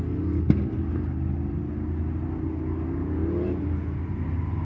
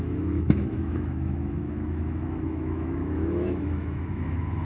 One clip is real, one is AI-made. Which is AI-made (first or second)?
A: second